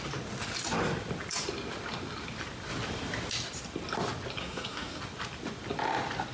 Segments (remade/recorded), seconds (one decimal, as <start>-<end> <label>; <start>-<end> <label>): 0.0-4.4 recorded; 4.4-5.0 remade; 5.0-6.3 recorded